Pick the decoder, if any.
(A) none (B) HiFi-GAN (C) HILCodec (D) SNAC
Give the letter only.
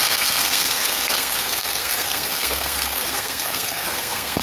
D